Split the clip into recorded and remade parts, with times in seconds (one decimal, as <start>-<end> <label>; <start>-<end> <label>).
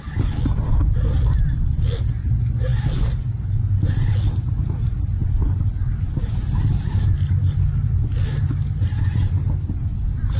0.0-10.4 recorded